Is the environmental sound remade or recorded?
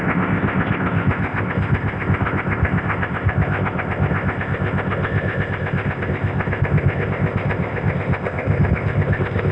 remade